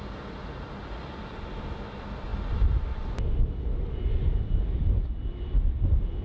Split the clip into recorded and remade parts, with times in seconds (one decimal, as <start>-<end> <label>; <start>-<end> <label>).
0.0-6.2 recorded